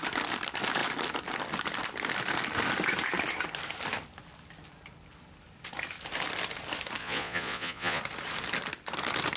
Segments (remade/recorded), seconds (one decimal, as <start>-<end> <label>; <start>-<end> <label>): 0.0-7.0 recorded; 7.0-8.0 remade; 8.0-9.4 recorded